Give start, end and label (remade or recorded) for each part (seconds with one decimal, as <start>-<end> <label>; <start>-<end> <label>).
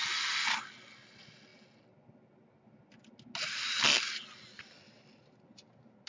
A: 0.0-6.1 recorded